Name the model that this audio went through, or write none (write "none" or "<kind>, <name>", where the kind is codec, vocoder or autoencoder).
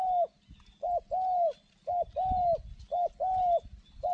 none